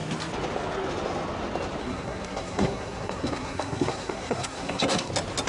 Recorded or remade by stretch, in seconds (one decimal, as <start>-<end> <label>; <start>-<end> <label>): 0.0-1.8 recorded; 1.8-5.1 remade; 5.1-5.5 recorded

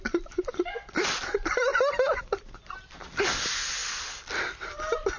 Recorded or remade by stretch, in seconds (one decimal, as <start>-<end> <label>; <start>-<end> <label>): 0.0-1.7 remade; 1.7-2.2 recorded; 2.2-2.6 remade; 2.6-3.1 recorded; 3.1-5.2 remade

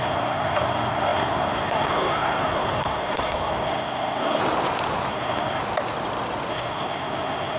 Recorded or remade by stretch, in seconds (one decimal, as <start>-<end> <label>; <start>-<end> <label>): 0.0-4.4 remade; 4.4-5.1 recorded; 5.1-5.6 remade; 5.6-6.5 recorded; 6.5-7.6 remade